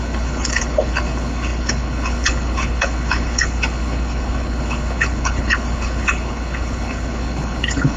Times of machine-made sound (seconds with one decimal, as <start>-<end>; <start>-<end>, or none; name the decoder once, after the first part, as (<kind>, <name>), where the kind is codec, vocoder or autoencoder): 0.0-8.0 (codec, HILCodec)